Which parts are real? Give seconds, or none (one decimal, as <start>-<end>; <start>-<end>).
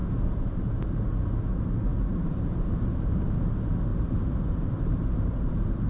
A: 0.8-1.9; 3.3-3.9; 5.5-5.9